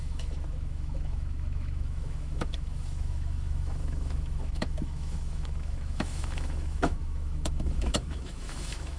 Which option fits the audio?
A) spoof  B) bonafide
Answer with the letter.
A